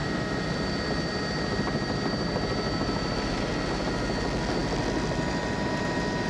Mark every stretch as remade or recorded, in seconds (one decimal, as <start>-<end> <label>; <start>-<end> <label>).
0.0-3.5 remade; 3.5-6.3 recorded